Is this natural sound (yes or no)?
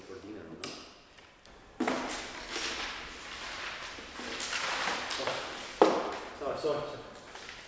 yes